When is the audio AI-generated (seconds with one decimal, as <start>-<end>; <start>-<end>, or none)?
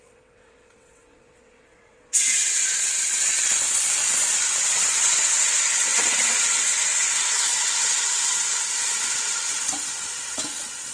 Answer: 0.0-10.9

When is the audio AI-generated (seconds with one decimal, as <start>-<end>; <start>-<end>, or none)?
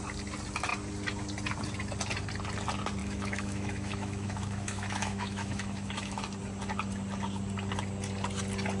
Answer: 3.0-6.2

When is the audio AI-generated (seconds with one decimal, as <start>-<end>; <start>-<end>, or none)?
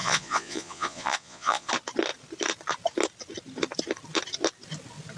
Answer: 0.0-1.7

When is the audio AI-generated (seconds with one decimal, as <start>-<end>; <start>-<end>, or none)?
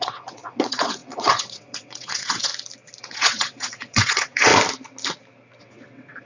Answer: 0.0-2.5; 3.0-4.5; 5.6-6.3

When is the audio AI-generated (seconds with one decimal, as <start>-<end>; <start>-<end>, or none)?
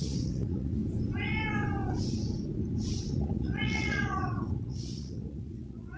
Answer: 0.0-0.8; 3.1-6.0